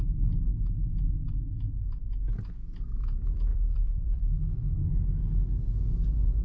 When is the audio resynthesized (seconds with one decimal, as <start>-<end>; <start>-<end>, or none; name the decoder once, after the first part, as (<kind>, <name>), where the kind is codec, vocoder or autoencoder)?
3.5-5.1 (vocoder, BigVGAN v2)